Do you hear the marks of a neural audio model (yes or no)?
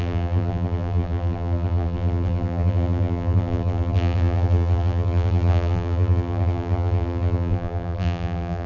yes